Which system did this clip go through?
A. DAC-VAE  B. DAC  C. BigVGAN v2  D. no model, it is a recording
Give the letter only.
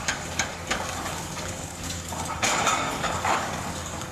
B